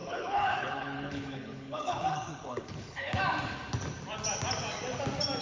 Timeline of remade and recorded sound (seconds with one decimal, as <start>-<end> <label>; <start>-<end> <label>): 0.0-3.2 remade; 3.2-5.4 recorded